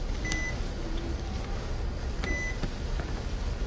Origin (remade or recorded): recorded